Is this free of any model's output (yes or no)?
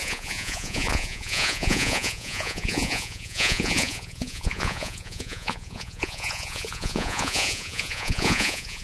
no